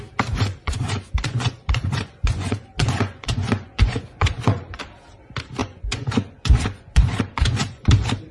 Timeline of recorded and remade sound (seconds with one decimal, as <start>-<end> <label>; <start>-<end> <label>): 0.0-0.5 recorded; 0.5-4.8 remade; 4.8-5.6 recorded; 5.6-7.9 remade; 7.9-8.3 recorded